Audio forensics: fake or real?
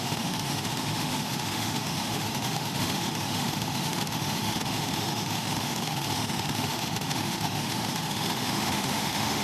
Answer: fake